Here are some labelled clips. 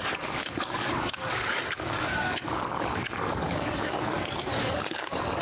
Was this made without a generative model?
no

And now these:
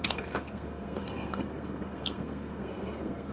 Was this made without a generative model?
no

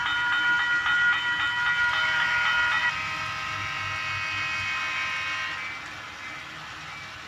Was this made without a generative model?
yes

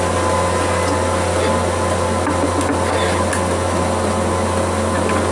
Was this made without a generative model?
yes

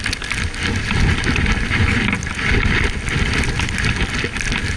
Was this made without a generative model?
yes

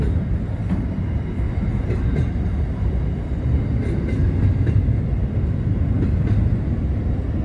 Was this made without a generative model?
yes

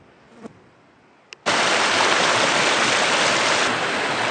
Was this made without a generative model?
yes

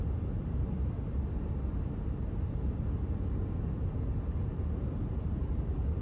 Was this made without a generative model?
yes